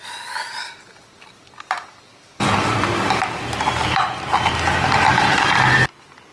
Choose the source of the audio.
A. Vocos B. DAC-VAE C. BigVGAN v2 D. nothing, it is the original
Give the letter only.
D